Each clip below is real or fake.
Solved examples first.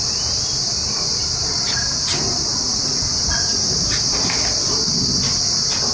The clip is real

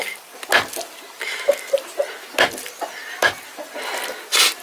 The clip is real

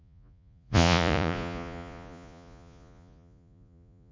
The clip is fake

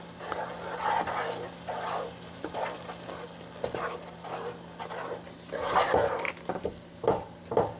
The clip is real